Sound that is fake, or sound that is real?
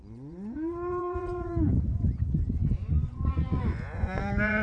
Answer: fake